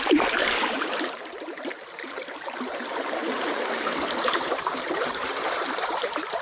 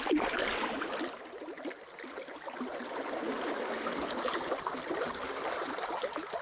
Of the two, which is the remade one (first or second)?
first